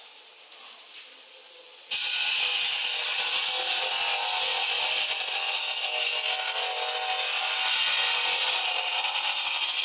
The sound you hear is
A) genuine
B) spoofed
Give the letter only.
A